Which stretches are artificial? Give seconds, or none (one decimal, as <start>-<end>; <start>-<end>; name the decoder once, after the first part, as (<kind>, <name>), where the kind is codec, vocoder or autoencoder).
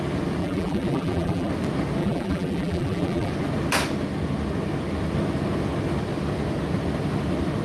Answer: 0.4-1.5 (vocoder, BigVGAN v2); 2.0-3.3